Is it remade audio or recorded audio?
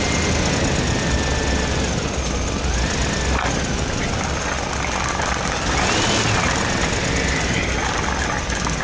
recorded